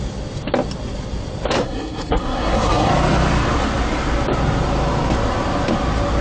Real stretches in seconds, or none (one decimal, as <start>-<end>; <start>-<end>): 0.0-1.6; 2.9-6.2